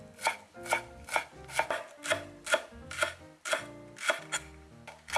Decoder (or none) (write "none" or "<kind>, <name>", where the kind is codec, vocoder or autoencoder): none